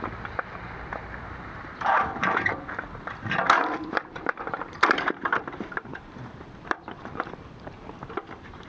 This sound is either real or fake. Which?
fake